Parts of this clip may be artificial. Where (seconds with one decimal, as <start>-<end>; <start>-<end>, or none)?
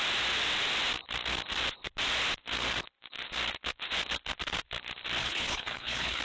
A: 5.2-6.2